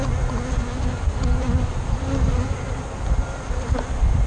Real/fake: real